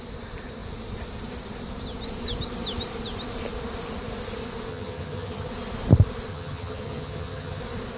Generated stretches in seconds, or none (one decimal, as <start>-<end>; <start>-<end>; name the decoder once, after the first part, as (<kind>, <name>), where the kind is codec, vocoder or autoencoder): 4.7-5.5 (vocoder, HiFi-GAN); 6.3-7.6